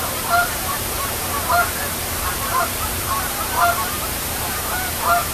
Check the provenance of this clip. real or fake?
fake